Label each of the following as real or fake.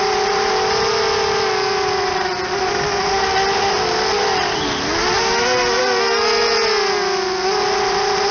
real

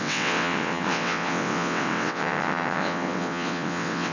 fake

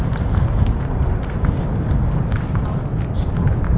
real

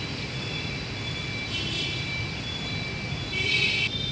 real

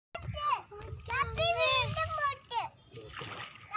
real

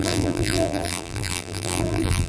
fake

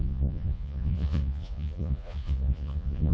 fake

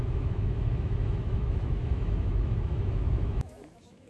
fake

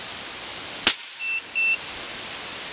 real